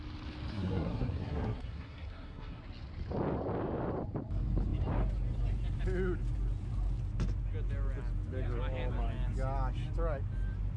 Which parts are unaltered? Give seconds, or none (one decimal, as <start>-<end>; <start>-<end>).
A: 0.0-0.5; 2.6-10.8